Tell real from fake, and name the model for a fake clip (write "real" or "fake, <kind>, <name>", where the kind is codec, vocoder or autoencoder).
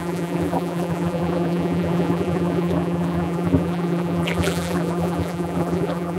fake, vocoder, BigVGAN v2